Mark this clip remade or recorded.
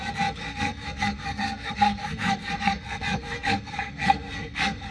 remade